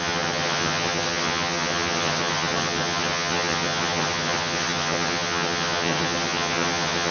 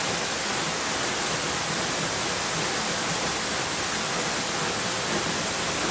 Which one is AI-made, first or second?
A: first